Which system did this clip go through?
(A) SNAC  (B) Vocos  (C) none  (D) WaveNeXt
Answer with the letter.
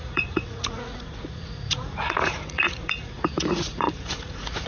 B